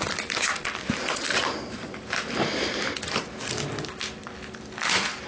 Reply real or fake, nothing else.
real